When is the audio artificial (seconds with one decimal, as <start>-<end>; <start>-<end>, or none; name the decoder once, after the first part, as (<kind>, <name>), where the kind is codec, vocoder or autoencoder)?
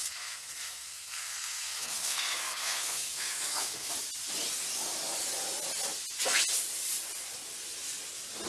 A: 0.0-3.9 (codec, SNAC)